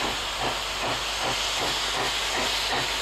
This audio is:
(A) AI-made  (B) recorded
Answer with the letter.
B